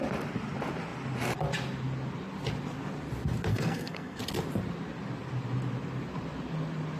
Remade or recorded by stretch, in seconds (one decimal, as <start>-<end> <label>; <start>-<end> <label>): 0.0-3.5 recorded; 3.5-4.2 remade; 4.2-7.0 recorded